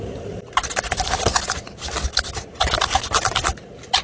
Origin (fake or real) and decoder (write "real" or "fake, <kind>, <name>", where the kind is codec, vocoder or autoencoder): real